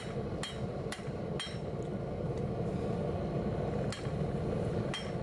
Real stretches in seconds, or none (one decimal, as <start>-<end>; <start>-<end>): 0.0-0.7; 1.2-5.2